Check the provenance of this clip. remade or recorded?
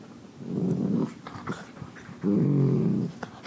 recorded